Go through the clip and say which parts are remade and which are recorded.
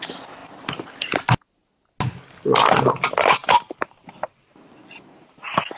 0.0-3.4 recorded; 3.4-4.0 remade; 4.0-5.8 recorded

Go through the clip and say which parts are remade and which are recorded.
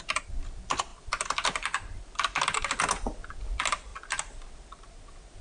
0.0-0.9 recorded; 0.9-3.3 remade; 3.3-3.9 recorded; 3.9-4.8 remade; 4.8-5.4 recorded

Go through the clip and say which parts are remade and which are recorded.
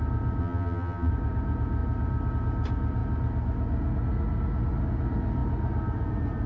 0.0-0.4 recorded; 0.4-1.1 remade; 1.1-6.5 recorded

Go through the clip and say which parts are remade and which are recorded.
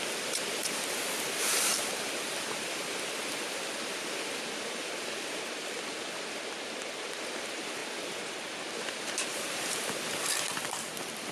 0.0-7.8 remade; 7.8-8.7 recorded; 8.7-11.3 remade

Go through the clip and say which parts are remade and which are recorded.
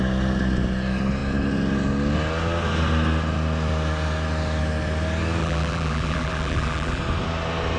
0.0-5.4 recorded; 5.4-7.0 remade; 7.0-7.8 recorded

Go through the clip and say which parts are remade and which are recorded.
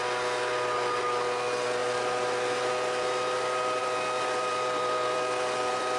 0.0-1.8 recorded; 1.8-2.7 remade; 2.7-3.8 recorded; 3.8-6.0 remade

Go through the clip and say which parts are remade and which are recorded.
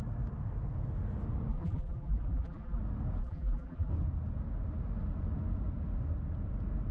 0.0-1.5 recorded; 1.5-2.8 remade; 2.8-3.2 recorded; 3.2-3.9 remade; 3.9-6.9 recorded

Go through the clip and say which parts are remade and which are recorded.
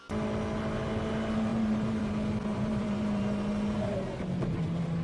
0.0-1.5 recorded; 1.5-2.1 remade; 2.1-2.5 recorded; 2.5-3.9 remade; 3.9-5.0 recorded